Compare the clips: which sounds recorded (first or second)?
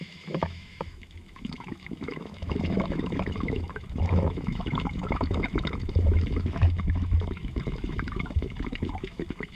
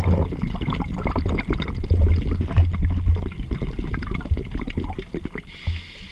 second